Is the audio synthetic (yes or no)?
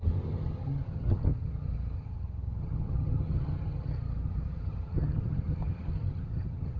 yes